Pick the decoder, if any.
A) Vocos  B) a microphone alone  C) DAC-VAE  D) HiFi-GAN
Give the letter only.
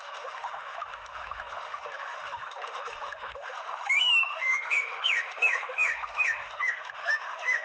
C